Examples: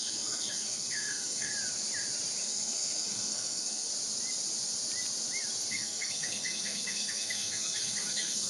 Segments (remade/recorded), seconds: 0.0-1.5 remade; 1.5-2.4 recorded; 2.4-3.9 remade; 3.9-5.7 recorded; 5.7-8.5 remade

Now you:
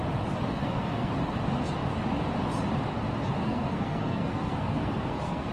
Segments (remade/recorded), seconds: 0.0-0.5 recorded; 0.5-1.1 remade; 1.1-3.4 recorded; 3.4-5.5 remade

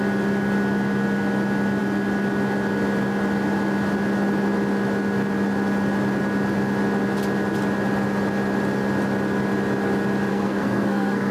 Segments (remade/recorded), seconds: 0.0-10.3 recorded; 10.3-11.3 remade